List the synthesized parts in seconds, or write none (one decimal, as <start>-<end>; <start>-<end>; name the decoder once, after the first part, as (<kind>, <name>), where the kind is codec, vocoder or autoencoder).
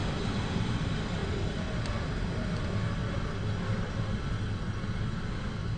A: none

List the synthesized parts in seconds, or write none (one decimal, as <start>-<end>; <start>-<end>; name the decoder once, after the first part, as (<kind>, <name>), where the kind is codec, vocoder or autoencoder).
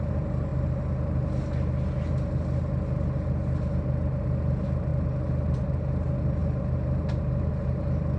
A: none